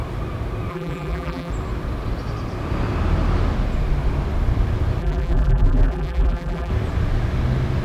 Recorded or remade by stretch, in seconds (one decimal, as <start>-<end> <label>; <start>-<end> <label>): 0.0-0.7 recorded; 0.7-1.5 remade; 1.5-5.0 recorded; 5.0-6.7 remade; 6.7-7.8 recorded